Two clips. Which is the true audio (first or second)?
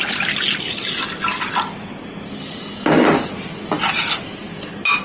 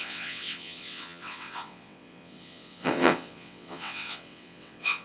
first